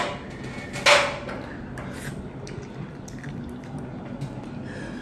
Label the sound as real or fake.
real